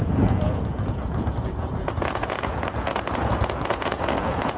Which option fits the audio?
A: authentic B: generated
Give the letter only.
B